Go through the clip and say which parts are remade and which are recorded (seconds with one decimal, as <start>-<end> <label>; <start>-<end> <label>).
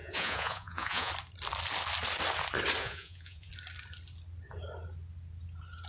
0.0-1.1 remade; 1.1-2.8 recorded; 2.8-3.5 remade; 3.5-5.9 recorded